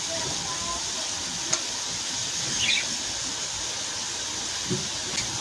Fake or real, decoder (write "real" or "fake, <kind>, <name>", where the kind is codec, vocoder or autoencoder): real